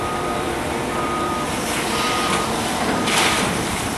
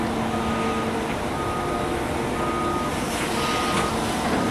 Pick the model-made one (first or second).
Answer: first